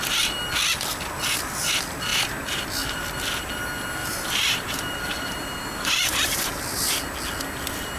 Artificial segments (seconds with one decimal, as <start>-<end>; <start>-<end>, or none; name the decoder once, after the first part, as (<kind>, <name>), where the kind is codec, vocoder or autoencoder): 4.0-6.6 (vocoder, BigVGAN v2)